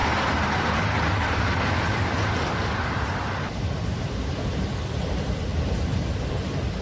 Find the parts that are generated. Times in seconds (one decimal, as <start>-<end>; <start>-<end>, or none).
none